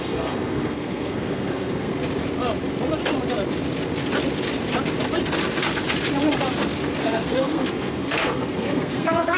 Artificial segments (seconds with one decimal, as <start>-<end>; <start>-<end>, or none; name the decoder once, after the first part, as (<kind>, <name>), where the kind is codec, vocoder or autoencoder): 0.0-1.9 (codec, SNAC); 7.0-9.4